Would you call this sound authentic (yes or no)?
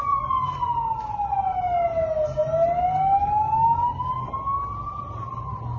yes